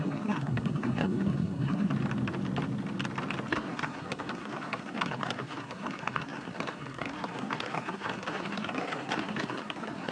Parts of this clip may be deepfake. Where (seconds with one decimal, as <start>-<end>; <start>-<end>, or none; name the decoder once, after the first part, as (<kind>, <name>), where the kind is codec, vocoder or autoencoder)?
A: 0.0-1.9 (codec, SNAC); 3.5-10.1